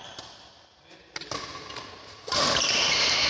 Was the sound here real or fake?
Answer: real